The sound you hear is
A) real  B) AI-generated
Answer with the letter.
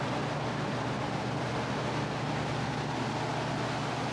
A